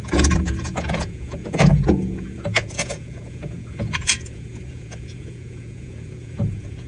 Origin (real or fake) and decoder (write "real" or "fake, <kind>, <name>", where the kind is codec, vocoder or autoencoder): fake, vocoder, Vocos